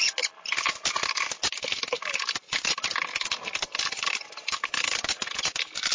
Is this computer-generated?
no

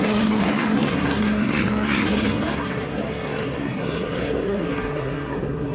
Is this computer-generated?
yes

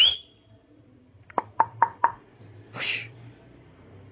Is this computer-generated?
yes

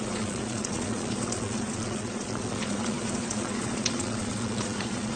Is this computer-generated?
yes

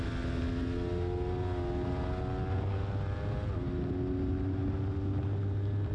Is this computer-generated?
no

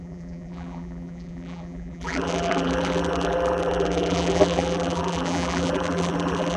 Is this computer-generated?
yes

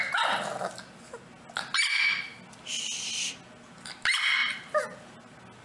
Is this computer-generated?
no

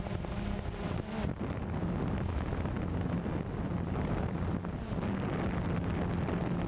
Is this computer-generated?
no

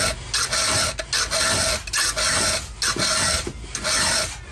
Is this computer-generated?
no